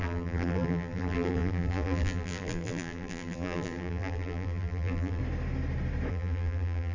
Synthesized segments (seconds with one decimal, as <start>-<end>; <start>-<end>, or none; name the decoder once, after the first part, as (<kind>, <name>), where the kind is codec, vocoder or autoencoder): 0.0-5.2 (vocoder, BigVGAN v2); 6.1-6.9